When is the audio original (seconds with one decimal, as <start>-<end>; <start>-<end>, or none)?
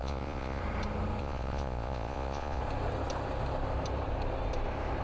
0.6-1.2; 2.6-5.0